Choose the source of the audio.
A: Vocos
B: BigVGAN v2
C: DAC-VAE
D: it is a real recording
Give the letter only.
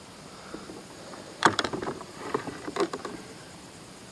B